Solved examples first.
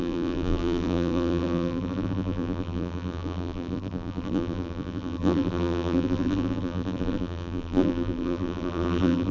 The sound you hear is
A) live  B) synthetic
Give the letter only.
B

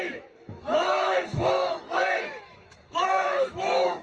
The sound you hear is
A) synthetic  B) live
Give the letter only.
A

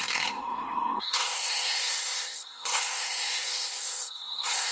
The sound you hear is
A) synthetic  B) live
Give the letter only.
A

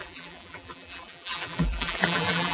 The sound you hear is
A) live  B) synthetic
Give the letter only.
B